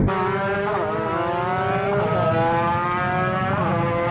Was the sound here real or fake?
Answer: real